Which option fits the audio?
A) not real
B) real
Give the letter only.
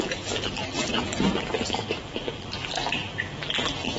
A